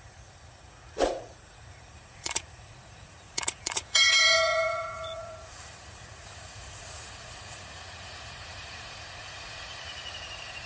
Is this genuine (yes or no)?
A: no